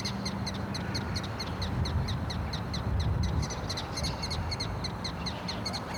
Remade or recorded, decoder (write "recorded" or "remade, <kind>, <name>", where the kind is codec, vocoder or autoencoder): recorded